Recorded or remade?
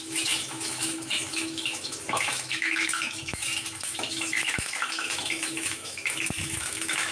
remade